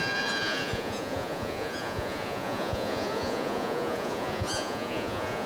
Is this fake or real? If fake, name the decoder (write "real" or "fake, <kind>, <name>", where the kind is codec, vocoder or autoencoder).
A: fake, vocoder, Vocos